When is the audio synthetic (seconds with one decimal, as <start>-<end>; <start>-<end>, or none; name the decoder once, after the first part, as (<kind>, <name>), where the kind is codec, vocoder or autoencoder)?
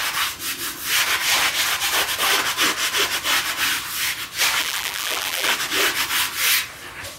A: 4.6-5.5 (vocoder, BigVGAN v2)